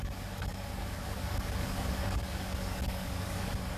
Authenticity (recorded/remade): remade